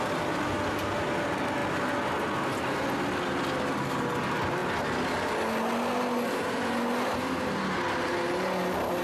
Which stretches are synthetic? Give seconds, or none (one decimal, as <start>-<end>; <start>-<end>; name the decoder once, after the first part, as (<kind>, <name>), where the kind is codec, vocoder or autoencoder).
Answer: none